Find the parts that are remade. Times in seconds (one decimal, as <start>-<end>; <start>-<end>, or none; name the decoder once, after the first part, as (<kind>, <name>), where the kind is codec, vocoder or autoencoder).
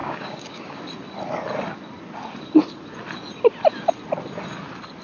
0.0-0.8 (codec, DAC)